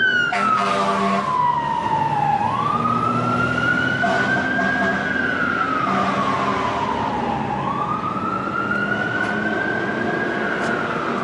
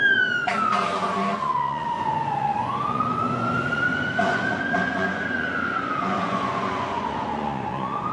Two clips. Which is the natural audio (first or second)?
first